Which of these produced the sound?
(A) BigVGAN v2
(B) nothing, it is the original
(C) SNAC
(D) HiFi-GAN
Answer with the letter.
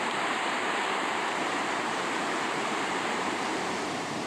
A